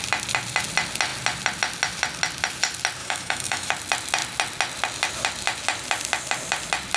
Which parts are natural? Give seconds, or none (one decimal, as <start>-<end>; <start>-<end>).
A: 0.0-3.0; 3.7-7.0